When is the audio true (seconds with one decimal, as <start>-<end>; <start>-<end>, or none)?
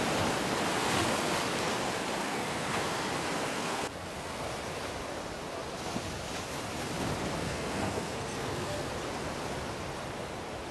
0.0-2.2; 3.1-3.5; 4.5-7.4; 8.9-10.7